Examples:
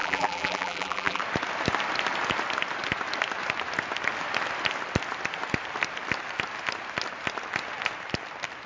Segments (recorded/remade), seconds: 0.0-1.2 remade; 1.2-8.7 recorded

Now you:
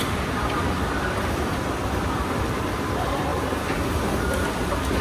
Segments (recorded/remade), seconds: 0.0-3.3 remade; 3.3-5.0 recorded

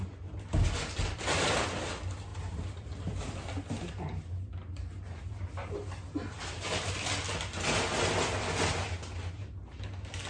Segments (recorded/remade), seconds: 0.0-2.3 recorded; 2.3-3.3 remade; 3.3-10.3 recorded

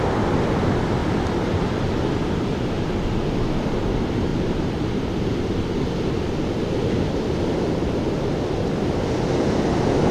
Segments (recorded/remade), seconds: 0.0-4.3 recorded; 4.3-5.1 remade; 5.1-10.1 recorded

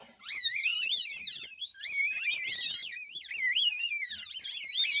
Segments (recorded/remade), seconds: 0.0-2.8 remade; 2.8-4.3 recorded; 4.3-5.0 remade